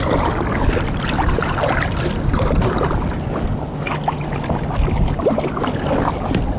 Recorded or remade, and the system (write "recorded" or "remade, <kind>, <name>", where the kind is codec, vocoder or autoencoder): recorded